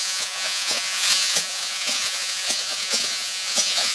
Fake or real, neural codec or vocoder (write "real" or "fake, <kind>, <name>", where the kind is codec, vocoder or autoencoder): fake, vocoder, Vocos